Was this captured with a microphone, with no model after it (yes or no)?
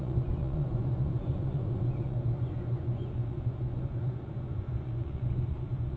no